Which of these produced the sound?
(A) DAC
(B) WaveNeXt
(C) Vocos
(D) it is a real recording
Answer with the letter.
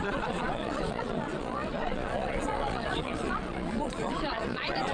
C